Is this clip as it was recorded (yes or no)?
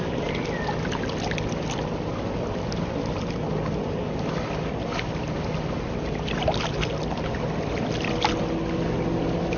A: yes